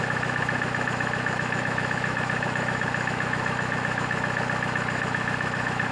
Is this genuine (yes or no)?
no